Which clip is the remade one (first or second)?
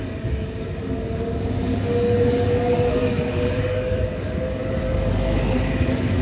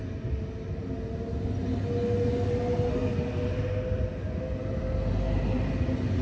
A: first